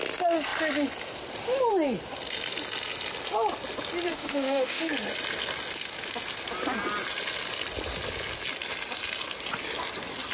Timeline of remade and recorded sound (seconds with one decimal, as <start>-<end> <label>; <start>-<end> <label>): 0.0-4.1 recorded; 4.1-4.9 remade; 4.9-10.3 recorded